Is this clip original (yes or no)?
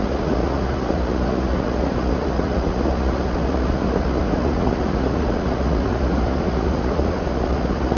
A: no